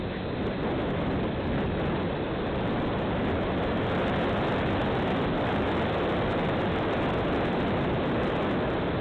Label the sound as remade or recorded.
recorded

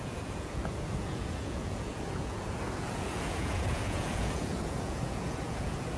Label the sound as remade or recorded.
remade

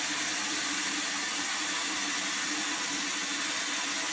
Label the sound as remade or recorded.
recorded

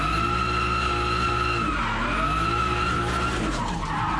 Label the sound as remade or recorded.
recorded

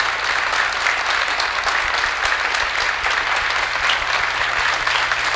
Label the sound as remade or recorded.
recorded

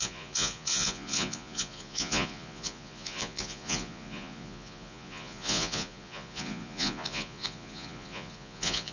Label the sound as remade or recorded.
remade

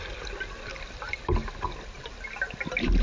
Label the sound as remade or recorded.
recorded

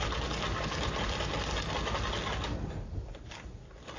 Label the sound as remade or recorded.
recorded